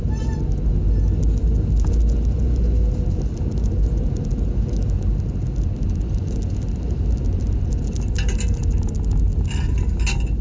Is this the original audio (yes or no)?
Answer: yes